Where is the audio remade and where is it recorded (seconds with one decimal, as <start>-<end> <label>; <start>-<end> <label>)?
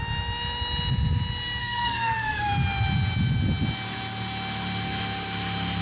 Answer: 0.0-1.6 recorded; 1.6-2.5 remade; 2.5-5.8 recorded